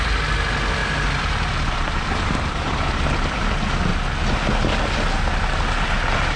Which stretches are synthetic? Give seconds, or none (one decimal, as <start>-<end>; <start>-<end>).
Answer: 0.8-3.4